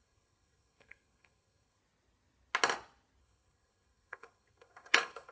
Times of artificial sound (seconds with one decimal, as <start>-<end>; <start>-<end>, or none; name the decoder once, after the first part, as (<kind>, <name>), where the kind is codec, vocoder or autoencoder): 0.0-1.8 (codec, SNAC); 3.2-5.3